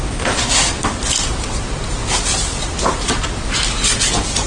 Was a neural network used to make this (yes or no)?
no